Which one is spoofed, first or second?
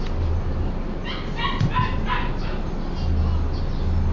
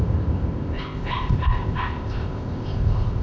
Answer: second